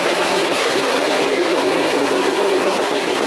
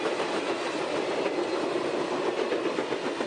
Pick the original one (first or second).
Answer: second